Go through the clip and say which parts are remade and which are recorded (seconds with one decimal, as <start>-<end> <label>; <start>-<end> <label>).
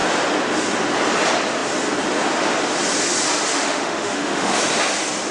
0.0-3.5 recorded; 3.5-4.6 remade; 4.6-5.3 recorded